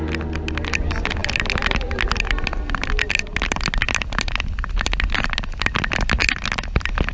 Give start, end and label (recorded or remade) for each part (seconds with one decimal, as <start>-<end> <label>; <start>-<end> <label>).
0.0-7.1 recorded

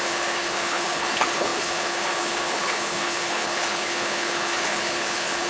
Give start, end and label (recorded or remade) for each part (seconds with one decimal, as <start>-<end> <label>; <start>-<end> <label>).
0.0-5.5 remade

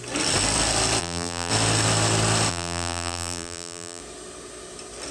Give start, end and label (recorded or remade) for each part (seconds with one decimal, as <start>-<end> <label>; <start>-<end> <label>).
0.0-1.0 recorded; 1.0-1.5 remade; 1.5-2.5 recorded; 2.5-4.0 remade; 4.0-5.1 recorded